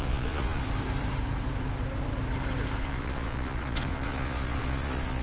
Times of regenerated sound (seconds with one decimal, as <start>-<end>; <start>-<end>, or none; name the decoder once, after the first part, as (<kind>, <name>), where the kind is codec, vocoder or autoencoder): 0.0-0.6 (vocoder, Vocos); 2.8-5.2